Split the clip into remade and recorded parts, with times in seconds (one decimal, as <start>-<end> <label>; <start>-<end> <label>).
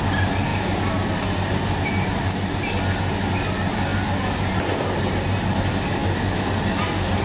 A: 0.0-7.2 recorded